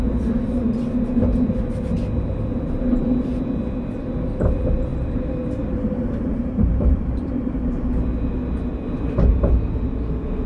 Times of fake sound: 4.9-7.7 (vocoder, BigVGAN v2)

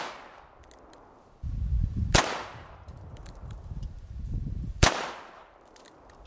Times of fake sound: 1.8-5.6 (vocoder, BigVGAN v2)

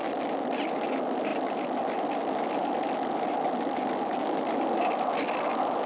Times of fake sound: none

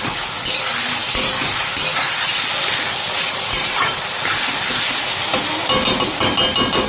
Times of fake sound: none

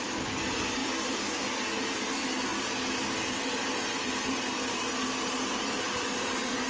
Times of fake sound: none

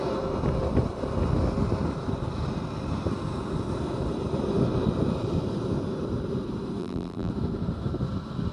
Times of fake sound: 6.8-7.3 (vocoder, BigVGAN v2)